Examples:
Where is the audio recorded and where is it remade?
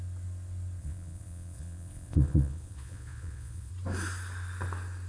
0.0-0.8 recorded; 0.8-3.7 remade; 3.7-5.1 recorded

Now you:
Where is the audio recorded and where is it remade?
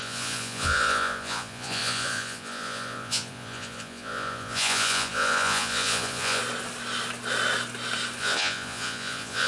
0.0-6.4 remade; 6.4-8.2 recorded; 8.2-9.5 remade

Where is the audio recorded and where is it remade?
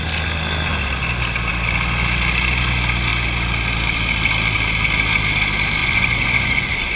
0.0-5.8 recorded; 5.8-7.0 remade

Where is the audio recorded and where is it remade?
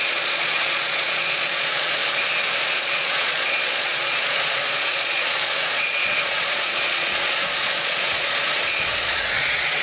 0.0-2.0 remade; 2.0-2.6 recorded; 2.6-9.8 remade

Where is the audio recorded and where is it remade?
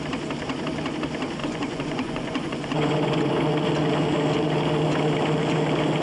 0.0-1.4 recorded; 1.4-3.3 remade; 3.3-6.0 recorded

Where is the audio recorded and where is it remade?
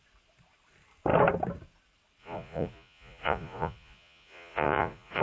0.0-2.2 recorded; 2.2-5.2 remade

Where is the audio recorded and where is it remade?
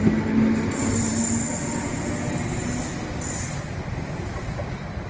0.0-5.1 recorded